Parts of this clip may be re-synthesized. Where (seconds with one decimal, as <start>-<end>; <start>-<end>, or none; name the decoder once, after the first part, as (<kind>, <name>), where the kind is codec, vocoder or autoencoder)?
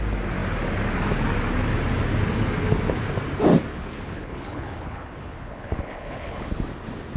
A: 3.7-6.5 (codec, HILCodec)